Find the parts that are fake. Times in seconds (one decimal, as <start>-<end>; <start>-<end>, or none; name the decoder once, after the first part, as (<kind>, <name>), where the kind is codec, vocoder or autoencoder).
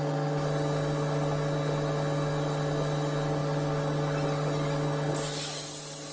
none